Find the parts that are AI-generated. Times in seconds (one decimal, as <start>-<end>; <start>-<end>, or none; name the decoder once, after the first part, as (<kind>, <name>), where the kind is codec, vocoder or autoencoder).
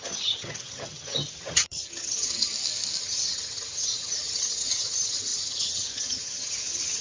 0.0-2.5 (vocoder, HiFi-GAN); 3.0-7.0